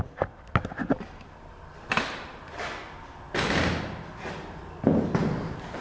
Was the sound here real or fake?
real